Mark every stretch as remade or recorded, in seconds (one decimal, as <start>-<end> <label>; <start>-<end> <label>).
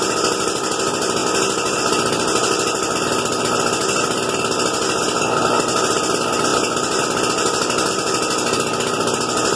0.0-9.6 recorded